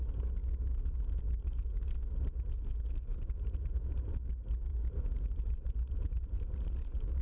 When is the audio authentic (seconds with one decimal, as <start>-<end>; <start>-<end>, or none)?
0.0-3.1; 3.8-4.7